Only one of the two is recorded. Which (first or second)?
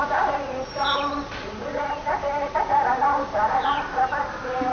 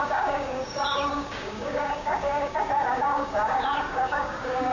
first